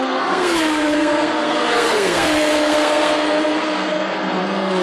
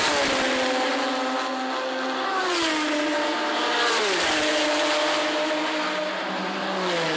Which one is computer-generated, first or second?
first